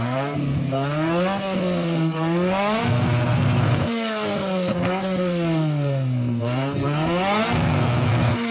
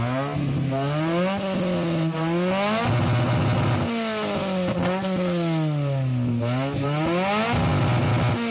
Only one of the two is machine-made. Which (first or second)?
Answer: first